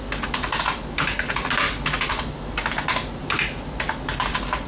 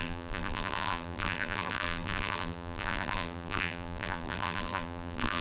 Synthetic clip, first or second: second